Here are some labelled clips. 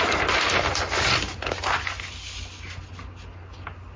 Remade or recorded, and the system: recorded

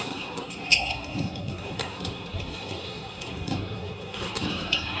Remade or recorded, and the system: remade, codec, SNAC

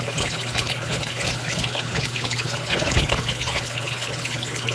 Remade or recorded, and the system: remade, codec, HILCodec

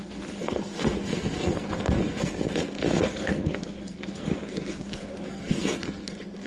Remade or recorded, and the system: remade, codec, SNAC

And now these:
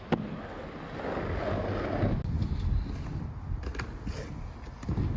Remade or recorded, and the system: recorded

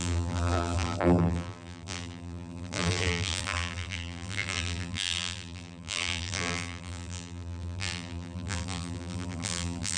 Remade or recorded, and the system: remade, vocoder, BigVGAN v2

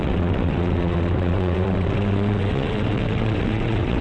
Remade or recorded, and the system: remade, vocoder, WaveNeXt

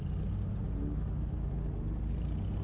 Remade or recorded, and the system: recorded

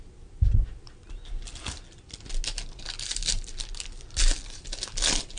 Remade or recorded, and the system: recorded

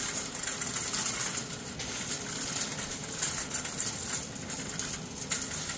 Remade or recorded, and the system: recorded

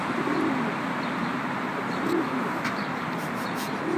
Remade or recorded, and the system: recorded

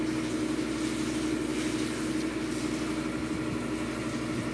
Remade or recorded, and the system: recorded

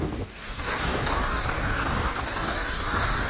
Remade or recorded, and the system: remade, codec, DAC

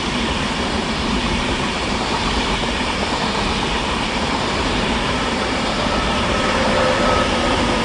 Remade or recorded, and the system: remade, vocoder, BigVGAN v2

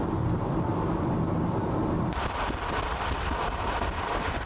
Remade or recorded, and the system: recorded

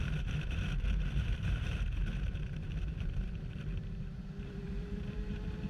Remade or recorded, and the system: remade, vocoder, BigVGAN v2